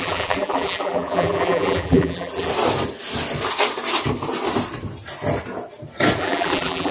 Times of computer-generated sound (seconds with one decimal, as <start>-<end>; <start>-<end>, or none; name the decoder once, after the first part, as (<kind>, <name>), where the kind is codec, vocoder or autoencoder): 0.0-2.5 (vocoder, BigVGAN v2); 6.2-6.9